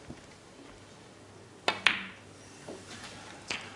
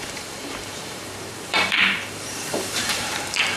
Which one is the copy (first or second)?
second